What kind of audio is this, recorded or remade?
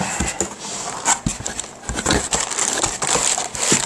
remade